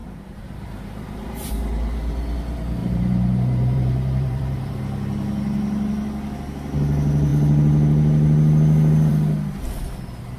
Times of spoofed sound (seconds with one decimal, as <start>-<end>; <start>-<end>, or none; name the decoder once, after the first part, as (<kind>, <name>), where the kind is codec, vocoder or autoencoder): 0.0-1.5 (vocoder, BigVGAN v2); 2.8-4.8